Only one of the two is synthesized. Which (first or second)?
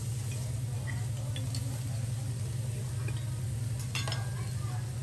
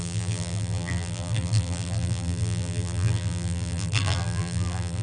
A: second